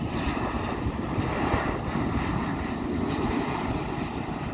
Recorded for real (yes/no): yes